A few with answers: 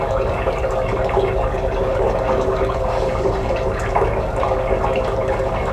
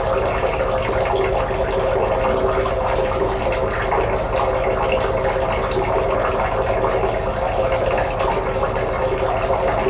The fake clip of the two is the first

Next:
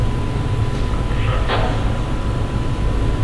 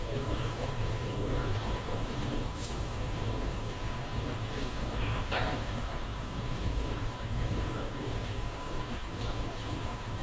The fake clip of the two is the second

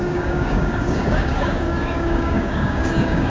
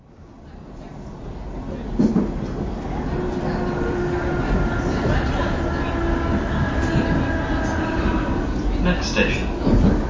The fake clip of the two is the first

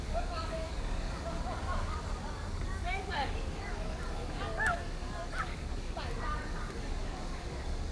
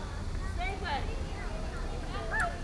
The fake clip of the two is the first